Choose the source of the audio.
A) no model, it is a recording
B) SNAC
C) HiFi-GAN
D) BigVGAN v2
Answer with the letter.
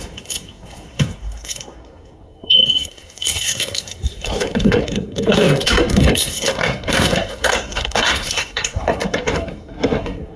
B